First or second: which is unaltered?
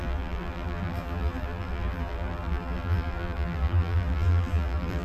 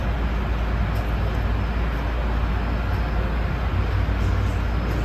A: second